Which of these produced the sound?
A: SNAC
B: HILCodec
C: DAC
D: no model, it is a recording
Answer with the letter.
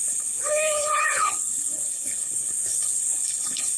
B